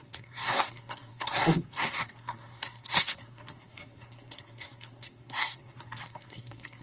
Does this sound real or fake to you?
fake